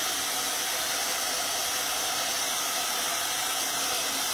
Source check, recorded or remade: recorded